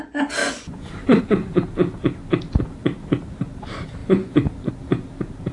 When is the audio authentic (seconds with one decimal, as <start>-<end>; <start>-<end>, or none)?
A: 0.0-0.4; 1.2-4.0; 4.7-5.5